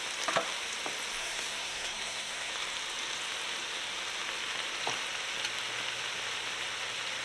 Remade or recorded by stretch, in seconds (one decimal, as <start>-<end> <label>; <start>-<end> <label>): 0.0-1.2 recorded; 1.2-2.5 remade; 2.5-7.2 recorded